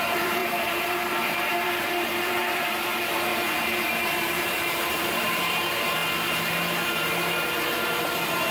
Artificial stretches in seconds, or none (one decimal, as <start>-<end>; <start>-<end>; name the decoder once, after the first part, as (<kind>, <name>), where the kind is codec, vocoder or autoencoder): 0.0-6.0 (vocoder, BigVGAN v2); 6.5-8.5